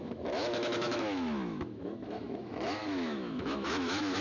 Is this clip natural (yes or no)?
no